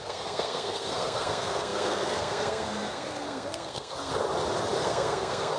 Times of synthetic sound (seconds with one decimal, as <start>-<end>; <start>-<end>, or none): 0.0-4.1; 4.8-5.6